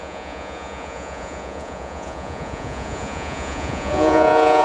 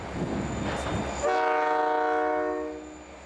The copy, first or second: first